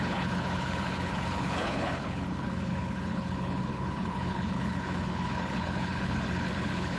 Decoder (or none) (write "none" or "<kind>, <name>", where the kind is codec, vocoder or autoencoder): codec, HILCodec